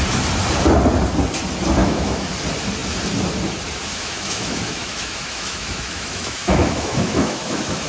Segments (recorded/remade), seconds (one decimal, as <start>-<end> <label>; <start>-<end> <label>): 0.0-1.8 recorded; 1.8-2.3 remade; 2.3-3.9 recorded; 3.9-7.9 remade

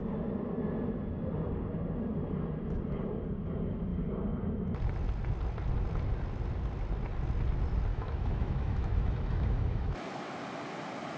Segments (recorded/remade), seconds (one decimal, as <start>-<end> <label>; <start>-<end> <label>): 0.0-7.9 recorded; 7.9-10.4 remade; 10.4-11.2 recorded

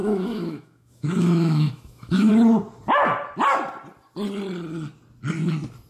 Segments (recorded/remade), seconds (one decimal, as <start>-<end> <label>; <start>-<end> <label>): 0.0-2.3 remade; 2.3-5.9 recorded